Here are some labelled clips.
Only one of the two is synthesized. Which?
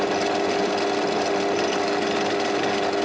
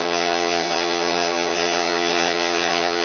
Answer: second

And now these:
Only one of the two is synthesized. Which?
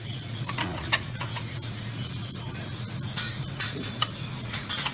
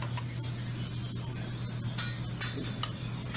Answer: first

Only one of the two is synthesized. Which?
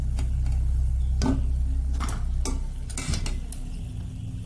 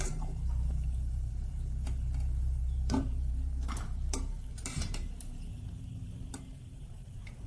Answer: second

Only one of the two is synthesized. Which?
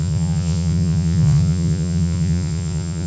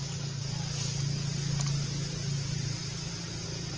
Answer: first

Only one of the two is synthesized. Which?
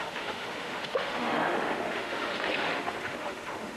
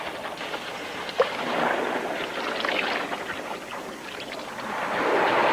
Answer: first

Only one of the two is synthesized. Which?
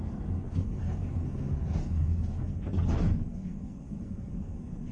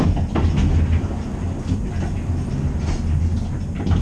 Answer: first